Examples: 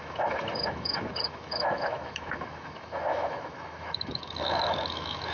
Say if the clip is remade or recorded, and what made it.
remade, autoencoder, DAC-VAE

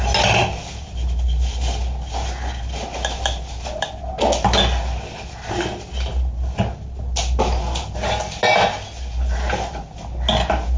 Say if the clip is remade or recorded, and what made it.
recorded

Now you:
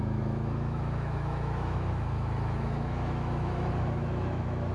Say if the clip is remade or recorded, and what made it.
remade, autoencoder, DAC-VAE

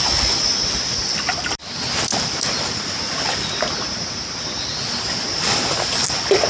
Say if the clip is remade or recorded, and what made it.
recorded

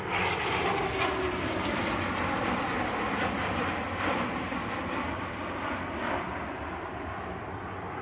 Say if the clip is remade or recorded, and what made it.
recorded